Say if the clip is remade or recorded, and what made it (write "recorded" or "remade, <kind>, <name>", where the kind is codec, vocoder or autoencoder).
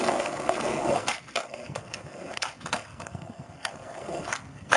remade, codec, SNAC